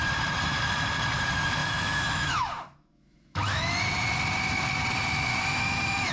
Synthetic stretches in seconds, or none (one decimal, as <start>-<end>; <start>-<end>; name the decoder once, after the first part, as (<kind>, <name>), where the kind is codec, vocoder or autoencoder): 1.6-3.8 (autoencoder, DAC-VAE); 5.3-6.1